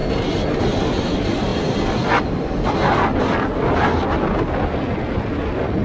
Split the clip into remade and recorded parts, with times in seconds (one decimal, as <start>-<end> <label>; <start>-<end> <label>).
0.0-5.8 recorded